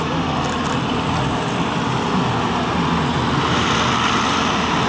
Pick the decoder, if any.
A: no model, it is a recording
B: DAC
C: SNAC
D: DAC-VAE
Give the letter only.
A